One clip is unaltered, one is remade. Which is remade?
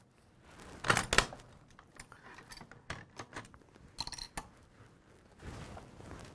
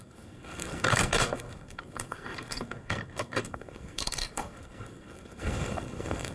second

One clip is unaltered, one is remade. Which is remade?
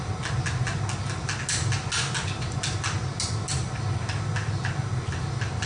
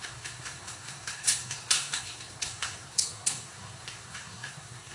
second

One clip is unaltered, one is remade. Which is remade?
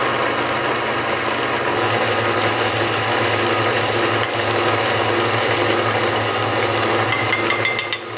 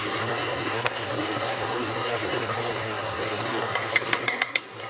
second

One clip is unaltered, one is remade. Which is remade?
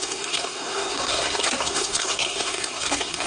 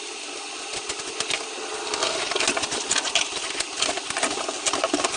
first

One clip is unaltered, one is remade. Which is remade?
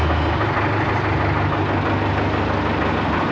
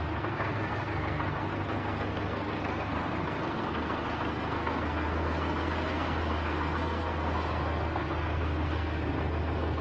second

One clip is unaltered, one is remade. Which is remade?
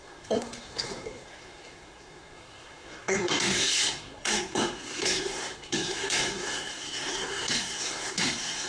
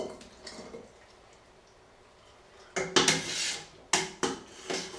first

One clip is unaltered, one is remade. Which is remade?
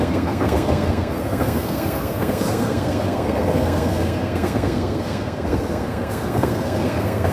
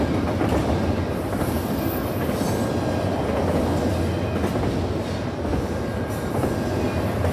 first